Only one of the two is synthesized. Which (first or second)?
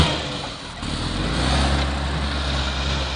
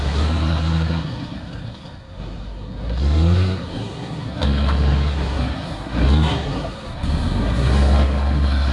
second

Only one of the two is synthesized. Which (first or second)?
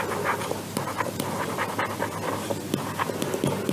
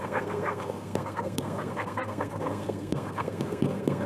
second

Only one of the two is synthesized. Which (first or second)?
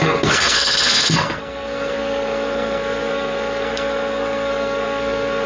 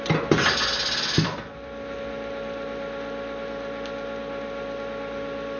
first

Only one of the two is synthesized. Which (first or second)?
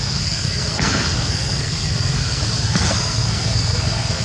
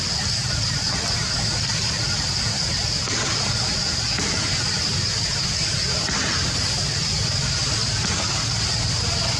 first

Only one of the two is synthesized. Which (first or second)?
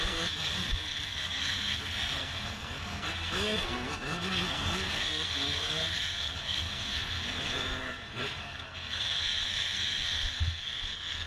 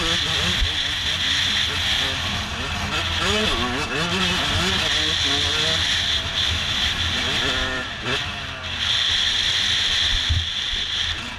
first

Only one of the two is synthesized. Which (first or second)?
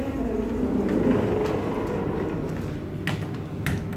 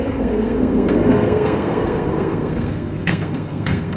second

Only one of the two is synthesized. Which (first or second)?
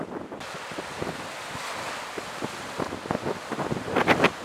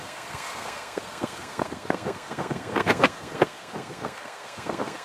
second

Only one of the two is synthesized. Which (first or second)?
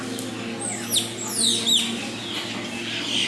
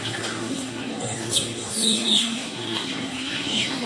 second